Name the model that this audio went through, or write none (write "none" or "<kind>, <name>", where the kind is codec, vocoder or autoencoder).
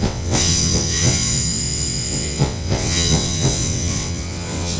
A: vocoder, WaveNeXt